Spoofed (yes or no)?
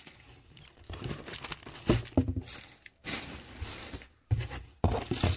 no